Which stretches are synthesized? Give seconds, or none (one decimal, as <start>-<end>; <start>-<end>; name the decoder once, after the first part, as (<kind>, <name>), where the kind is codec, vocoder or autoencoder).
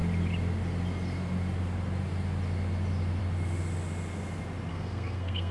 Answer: 4.7-5.5 (codec, SNAC)